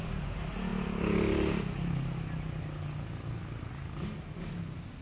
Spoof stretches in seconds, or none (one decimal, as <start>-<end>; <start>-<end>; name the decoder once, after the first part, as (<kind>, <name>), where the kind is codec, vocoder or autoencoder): none